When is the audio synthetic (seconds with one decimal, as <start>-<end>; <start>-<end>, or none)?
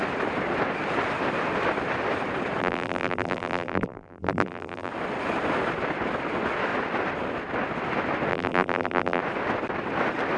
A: 2.6-4.9; 8.3-9.2